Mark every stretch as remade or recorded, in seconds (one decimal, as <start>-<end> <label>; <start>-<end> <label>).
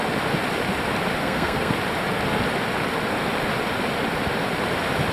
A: 0.0-1.2 recorded; 1.2-1.7 remade; 1.7-5.1 recorded